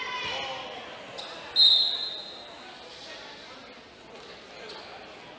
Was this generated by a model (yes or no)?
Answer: no